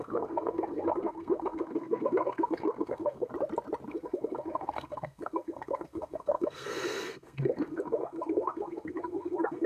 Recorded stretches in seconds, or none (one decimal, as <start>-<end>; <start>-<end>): 3.3-3.9